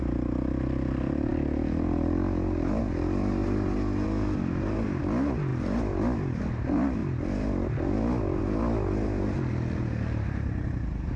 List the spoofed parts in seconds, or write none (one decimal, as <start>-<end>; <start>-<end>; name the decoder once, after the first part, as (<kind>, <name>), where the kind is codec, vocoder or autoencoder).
none